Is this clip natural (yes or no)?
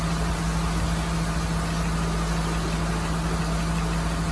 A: yes